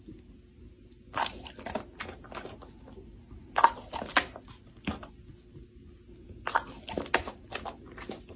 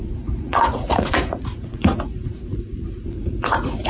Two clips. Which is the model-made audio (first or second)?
second